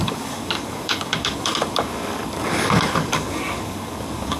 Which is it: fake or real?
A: fake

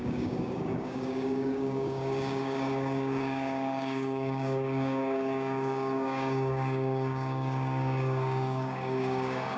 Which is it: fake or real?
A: fake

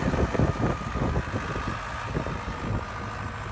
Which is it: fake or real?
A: real